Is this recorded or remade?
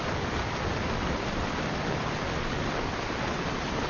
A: recorded